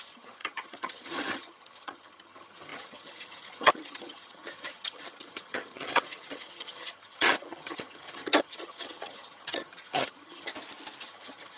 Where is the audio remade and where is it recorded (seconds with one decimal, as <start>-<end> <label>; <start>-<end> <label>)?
0.0-10.5 remade; 10.5-11.0 recorded; 11.0-11.6 remade